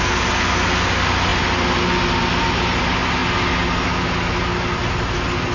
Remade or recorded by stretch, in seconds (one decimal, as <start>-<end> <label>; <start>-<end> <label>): 0.0-5.5 recorded